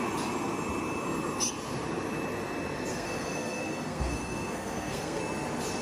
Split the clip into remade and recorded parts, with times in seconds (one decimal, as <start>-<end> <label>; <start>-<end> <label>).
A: 0.0-2.9 recorded; 2.9-5.2 remade; 5.2-5.8 recorded